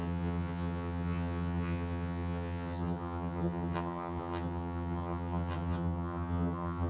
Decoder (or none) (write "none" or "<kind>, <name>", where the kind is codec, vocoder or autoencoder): vocoder, HiFi-GAN